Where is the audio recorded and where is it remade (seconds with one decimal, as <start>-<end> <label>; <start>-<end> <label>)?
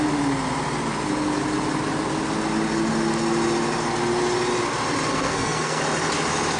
0.0-5.1 recorded; 5.1-5.8 remade; 5.8-6.6 recorded